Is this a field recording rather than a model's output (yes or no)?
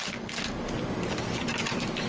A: yes